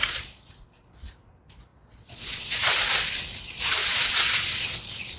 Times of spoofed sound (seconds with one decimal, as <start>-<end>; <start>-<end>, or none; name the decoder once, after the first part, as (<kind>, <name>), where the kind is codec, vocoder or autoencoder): 1.7-2.8 (vocoder, Vocos); 3.8-4.7